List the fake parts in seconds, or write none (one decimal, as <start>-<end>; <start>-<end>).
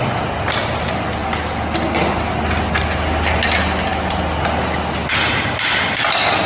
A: none